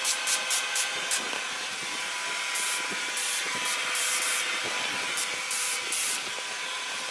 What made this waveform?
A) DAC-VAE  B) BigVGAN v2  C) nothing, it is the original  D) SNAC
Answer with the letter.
C